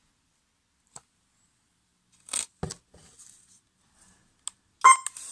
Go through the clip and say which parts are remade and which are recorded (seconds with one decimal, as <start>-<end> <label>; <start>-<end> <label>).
0.0-5.3 recorded